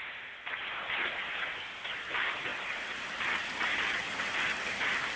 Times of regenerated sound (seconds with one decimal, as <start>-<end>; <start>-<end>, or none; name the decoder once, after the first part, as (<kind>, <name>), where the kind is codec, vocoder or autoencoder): none